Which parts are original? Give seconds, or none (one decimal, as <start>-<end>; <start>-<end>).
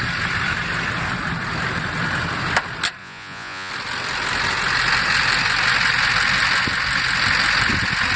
0.0-3.0; 3.7-8.2